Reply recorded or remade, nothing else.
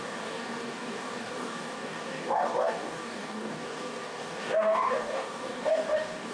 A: remade